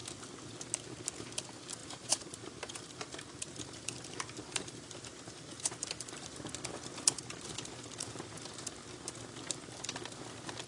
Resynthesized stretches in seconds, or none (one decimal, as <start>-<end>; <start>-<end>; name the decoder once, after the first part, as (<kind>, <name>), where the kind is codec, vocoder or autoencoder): 1.8-6.5 (vocoder, BigVGAN v2)